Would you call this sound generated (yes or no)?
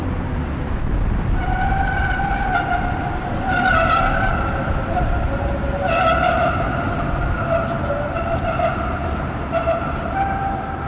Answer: no